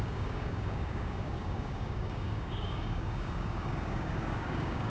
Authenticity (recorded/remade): remade